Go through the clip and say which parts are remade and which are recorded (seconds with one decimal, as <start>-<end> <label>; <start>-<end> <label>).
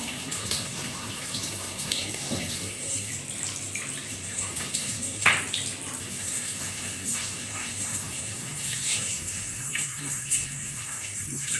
0.0-3.1 remade; 3.1-4.1 recorded; 4.1-5.3 remade; 5.3-6.0 recorded; 6.0-11.6 remade